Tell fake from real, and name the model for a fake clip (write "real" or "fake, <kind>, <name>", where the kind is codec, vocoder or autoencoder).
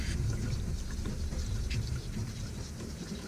fake, vocoder, BigVGAN v2